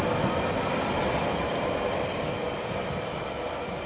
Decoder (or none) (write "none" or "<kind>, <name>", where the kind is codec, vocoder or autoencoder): none